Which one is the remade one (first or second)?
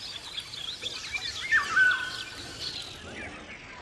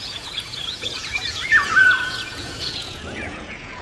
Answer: second